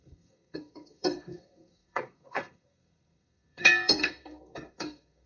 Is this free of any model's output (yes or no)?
no